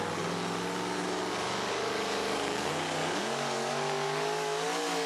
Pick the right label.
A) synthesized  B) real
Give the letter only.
A